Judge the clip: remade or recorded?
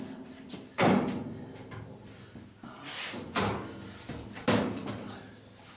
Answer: remade